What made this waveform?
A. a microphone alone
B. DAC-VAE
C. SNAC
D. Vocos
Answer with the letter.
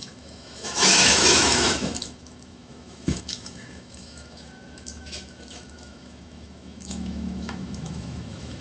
B